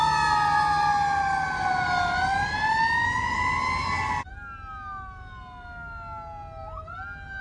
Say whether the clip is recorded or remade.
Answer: recorded